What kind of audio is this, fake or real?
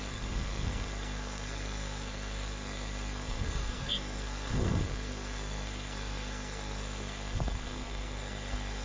fake